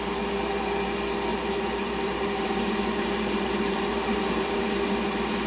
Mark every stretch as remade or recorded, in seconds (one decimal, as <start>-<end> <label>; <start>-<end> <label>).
0.0-1.3 recorded; 1.3-4.6 remade; 4.6-5.5 recorded